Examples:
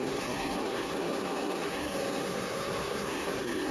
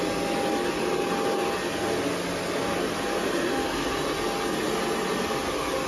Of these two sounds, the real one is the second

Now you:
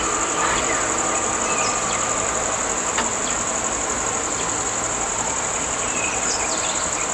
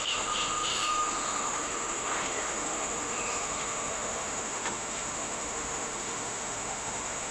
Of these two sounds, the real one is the first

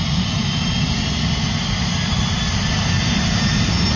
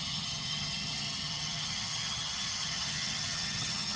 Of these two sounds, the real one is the first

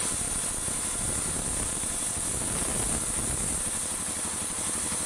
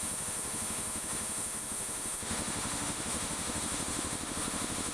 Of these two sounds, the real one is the first